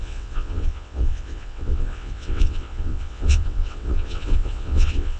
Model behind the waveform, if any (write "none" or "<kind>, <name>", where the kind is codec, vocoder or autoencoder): vocoder, WaveNeXt